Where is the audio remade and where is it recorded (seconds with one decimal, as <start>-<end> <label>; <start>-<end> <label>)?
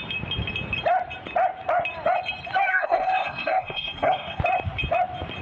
0.0-2.7 recorded; 2.7-4.4 remade; 4.4-5.4 recorded